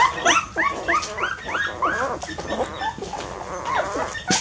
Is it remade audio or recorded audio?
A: recorded